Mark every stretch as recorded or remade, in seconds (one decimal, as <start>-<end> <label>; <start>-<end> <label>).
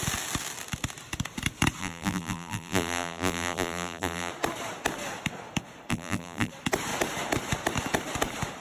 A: 0.0-1.8 recorded; 1.8-4.3 remade; 4.3-5.9 recorded; 5.9-6.5 remade; 6.5-8.6 recorded